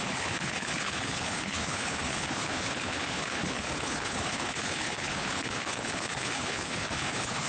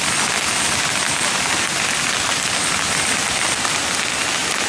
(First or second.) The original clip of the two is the second